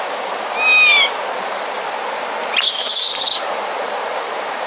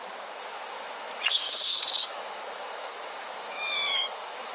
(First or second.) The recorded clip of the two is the first